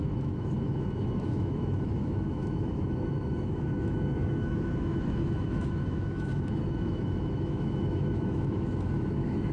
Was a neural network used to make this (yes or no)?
yes